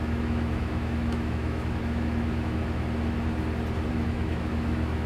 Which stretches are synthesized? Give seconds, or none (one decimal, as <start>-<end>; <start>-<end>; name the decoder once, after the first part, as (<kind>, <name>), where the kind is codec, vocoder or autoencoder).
0.0-2.6 (autoencoder, DAC-VAE); 3.9-5.1